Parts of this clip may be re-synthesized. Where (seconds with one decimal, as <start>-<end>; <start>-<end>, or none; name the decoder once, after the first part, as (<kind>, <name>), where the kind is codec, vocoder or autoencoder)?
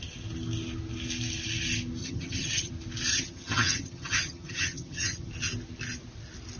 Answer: 2.0-2.7 (vocoder, HiFi-GAN); 3.1-5.3